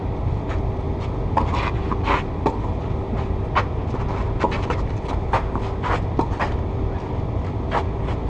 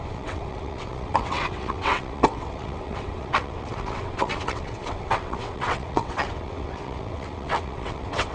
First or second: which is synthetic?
second